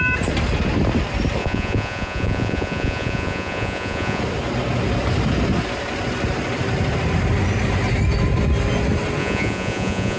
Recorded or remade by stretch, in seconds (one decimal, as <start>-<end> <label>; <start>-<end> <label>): 0.0-1.4 recorded; 1.4-4.2 remade; 4.2-9.2 recorded; 9.2-10.2 remade